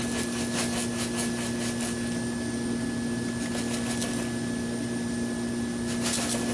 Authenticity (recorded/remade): recorded